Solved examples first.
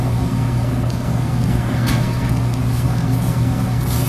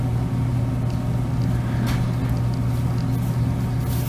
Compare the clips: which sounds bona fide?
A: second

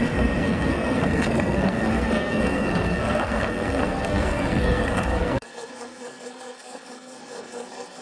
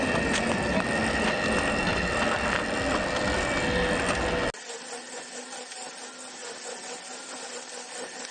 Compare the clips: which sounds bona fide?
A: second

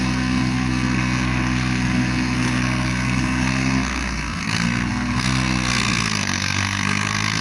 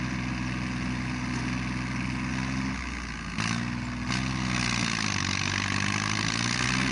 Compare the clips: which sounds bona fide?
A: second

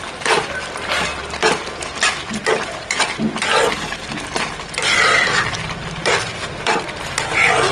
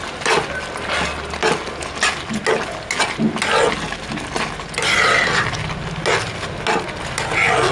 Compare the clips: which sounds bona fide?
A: second